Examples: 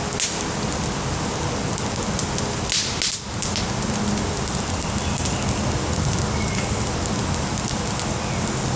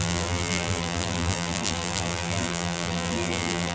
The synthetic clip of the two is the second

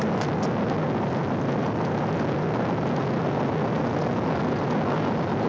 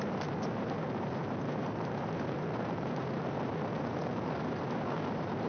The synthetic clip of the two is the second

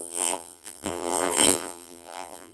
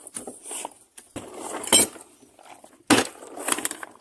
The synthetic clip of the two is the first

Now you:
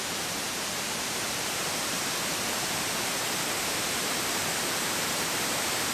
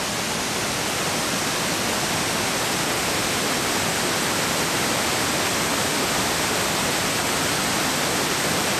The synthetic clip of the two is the first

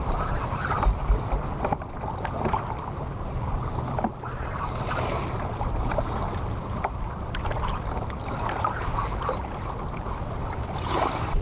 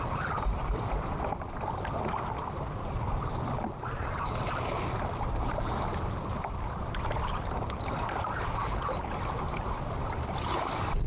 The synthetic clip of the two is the second